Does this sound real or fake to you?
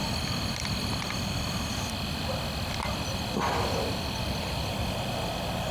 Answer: real